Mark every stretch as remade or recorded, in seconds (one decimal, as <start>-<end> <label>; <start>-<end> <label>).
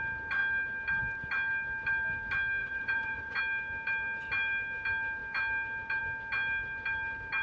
0.0-2.6 recorded; 2.6-3.4 remade; 3.4-7.4 recorded